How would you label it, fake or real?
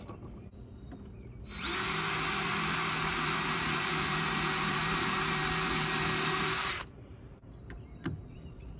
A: fake